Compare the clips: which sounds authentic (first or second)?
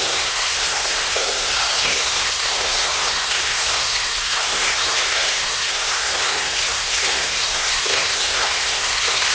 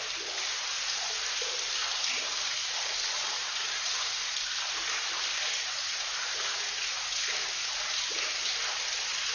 second